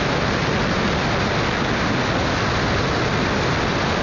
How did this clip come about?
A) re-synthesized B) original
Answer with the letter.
B